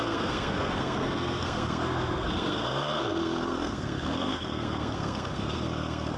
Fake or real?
fake